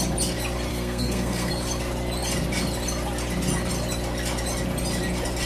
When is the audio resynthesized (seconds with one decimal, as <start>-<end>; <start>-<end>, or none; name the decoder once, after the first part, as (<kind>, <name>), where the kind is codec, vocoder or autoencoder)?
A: 0.7-1.5 (codec, SNAC)